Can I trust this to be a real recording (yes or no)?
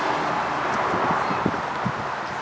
yes